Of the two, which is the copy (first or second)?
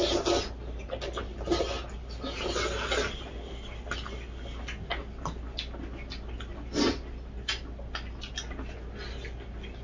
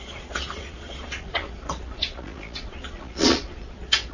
second